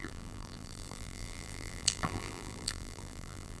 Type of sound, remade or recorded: remade